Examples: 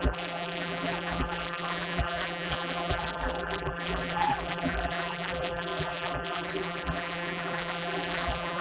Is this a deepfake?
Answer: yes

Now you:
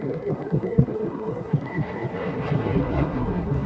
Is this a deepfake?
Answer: yes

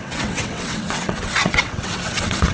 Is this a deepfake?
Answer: yes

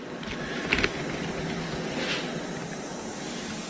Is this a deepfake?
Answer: no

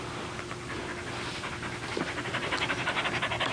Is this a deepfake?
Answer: no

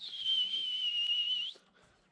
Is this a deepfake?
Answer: no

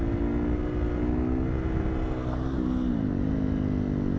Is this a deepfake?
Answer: no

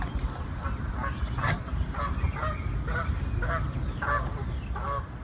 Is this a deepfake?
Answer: no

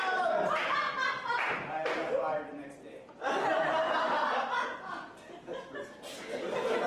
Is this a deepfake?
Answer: no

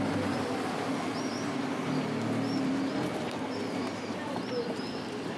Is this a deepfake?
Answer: no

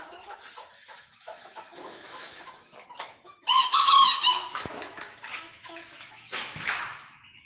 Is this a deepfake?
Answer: yes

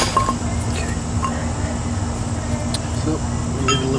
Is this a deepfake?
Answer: no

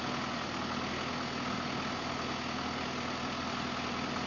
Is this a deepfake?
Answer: no